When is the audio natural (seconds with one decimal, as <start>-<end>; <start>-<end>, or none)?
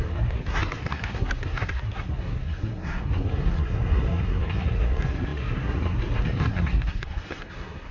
none